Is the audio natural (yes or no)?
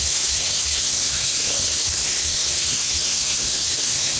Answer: no